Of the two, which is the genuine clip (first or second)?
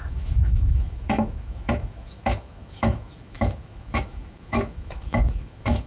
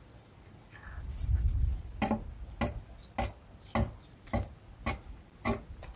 second